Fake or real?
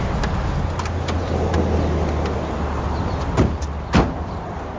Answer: real